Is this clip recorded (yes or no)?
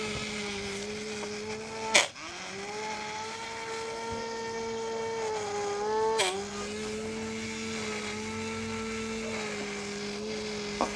yes